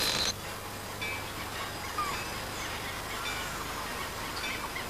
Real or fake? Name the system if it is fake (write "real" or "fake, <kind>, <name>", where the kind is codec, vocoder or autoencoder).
real